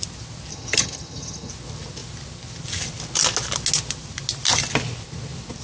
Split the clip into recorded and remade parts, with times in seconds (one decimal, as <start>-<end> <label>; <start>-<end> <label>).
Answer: 0.0-0.5 recorded; 0.5-1.5 remade; 1.5-5.6 recorded